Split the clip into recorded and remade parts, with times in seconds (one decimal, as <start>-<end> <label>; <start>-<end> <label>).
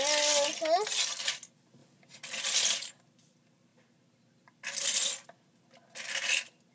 0.0-6.7 recorded